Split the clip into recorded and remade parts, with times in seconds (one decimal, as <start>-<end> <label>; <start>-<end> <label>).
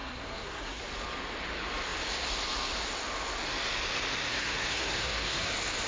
0.0-0.8 remade; 0.8-4.3 recorded; 4.3-5.5 remade; 5.5-5.9 recorded